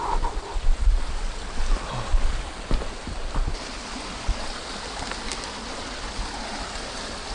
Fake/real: real